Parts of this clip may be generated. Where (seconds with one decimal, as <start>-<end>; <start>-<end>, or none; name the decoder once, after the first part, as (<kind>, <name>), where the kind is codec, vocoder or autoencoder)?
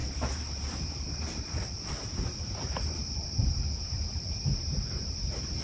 0.0-5.6 (vocoder, BigVGAN v2)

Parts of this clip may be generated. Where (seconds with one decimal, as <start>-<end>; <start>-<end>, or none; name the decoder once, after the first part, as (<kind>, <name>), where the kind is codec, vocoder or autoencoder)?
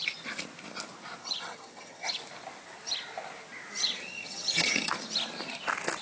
1.2-2.1 (vocoder, HiFi-GAN); 3.8-4.9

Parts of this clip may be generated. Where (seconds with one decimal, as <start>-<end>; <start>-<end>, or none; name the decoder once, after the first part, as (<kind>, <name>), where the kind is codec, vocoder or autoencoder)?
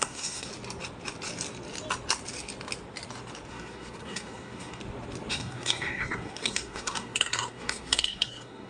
0.0-0.5 (codec, SNAC); 3.5-4.8; 5.3-8.7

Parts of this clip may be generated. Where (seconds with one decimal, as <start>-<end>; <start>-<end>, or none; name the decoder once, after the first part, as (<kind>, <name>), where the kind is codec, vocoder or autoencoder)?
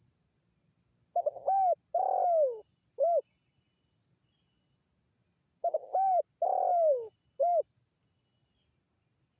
none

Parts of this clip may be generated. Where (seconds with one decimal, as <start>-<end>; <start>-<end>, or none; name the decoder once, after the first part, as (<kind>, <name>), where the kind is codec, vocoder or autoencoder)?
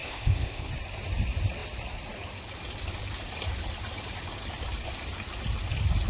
0.0-0.7 (codec, ZipCodec)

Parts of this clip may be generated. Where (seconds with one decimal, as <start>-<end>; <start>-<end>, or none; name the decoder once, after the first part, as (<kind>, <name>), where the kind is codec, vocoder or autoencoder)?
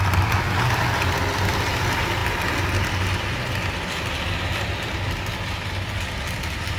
none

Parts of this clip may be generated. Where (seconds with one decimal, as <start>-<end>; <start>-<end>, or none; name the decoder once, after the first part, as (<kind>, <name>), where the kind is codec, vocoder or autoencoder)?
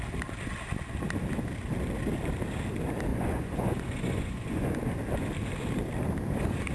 3.1-4.8 (vocoder, Vocos)